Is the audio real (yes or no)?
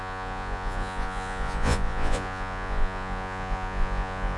no